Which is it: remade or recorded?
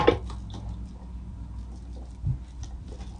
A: recorded